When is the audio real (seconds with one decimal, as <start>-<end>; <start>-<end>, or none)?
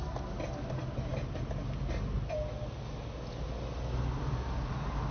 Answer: 0.0-5.1